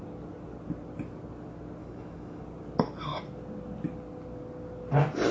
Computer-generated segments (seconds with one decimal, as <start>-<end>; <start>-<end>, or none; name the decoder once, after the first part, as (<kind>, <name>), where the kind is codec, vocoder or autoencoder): 1.8-2.4 (autoencoder, DAC-VAE)